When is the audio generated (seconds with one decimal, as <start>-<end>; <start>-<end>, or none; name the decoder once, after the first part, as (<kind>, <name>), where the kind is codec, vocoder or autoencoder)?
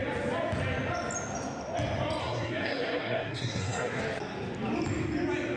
2.2-4.0 (codec, SNAC)